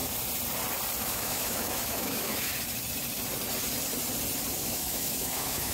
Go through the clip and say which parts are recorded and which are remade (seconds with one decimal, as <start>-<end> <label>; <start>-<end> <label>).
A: 0.0-1.0 recorded; 1.0-2.5 remade; 2.5-4.6 recorded; 4.6-5.7 remade

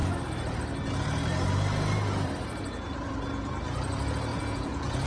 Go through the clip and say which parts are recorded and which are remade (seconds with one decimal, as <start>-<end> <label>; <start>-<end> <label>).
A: 0.0-4.3 recorded; 4.3-5.1 remade

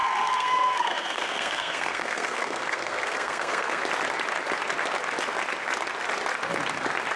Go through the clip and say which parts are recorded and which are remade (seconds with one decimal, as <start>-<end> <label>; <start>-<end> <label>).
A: 0.0-3.8 remade; 3.8-7.2 recorded

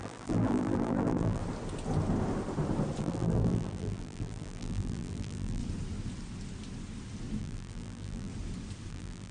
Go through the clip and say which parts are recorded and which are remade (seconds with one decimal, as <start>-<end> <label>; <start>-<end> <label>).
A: 0.0-1.4 remade; 1.4-3.0 recorded; 3.0-5.6 remade; 5.6-7.4 recorded; 7.4-8.3 remade; 8.3-8.9 recorded; 8.9-9.3 remade

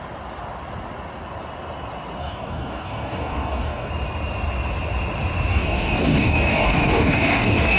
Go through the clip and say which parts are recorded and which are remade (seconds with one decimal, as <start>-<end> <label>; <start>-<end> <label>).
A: 0.0-2.2 recorded; 2.2-3.9 remade; 3.9-5.5 recorded; 5.5-7.8 remade